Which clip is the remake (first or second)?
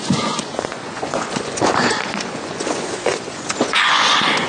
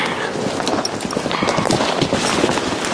first